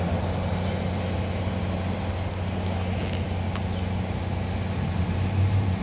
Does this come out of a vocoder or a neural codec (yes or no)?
no